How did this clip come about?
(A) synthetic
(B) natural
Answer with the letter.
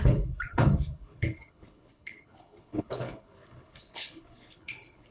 A